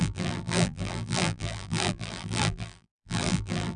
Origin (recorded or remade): remade